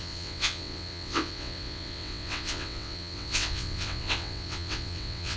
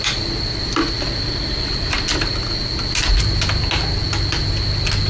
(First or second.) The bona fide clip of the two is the second